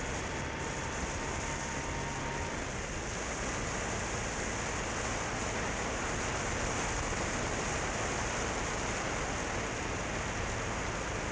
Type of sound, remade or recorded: recorded